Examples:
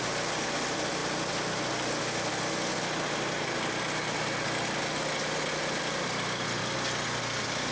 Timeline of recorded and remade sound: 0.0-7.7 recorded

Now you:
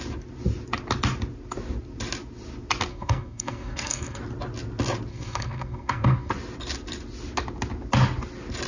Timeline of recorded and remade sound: 0.0-2.9 recorded; 2.9-4.2 remade; 4.2-5.1 recorded; 5.1-6.3 remade; 6.3-8.7 recorded

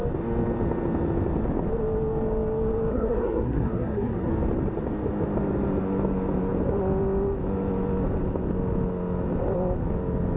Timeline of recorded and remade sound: 0.0-2.9 recorded; 2.9-4.3 remade; 4.3-10.4 recorded